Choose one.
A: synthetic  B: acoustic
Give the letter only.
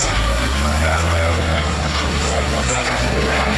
A